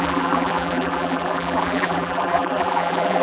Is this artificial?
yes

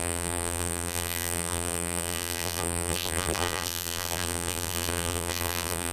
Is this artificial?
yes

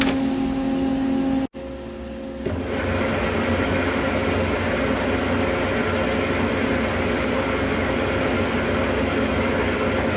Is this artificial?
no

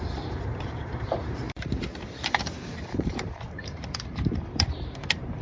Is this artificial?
yes